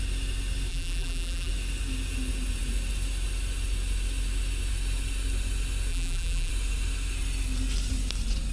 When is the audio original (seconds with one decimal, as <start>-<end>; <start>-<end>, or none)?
0.0-0.7; 1.5-5.9; 6.5-8.5